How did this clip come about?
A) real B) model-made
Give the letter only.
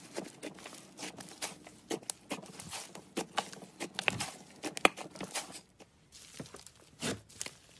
A